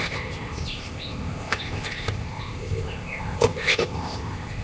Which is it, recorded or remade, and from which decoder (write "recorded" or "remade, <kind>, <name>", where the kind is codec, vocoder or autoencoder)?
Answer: remade, codec, ZipCodec